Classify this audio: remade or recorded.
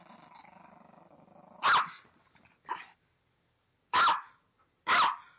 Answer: recorded